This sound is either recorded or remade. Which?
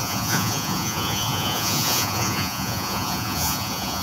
remade